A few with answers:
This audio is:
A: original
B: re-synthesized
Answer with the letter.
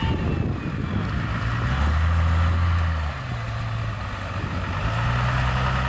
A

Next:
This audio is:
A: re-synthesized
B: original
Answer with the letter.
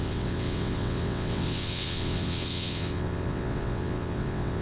A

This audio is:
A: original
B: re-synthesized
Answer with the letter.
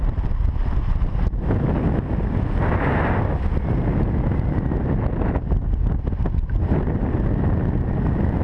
A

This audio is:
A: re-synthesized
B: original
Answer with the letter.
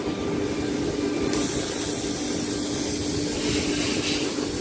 B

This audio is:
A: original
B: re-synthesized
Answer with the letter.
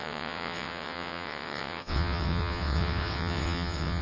B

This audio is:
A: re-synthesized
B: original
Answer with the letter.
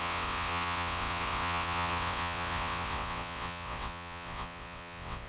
A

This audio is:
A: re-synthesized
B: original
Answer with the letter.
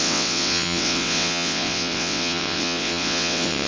A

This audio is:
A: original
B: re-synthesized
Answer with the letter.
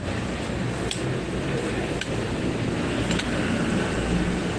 A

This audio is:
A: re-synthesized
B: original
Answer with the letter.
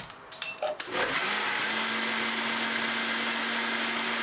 B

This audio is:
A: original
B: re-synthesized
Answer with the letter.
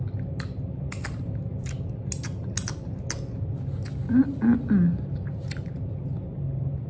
A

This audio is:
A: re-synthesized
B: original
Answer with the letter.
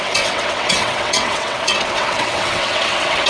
A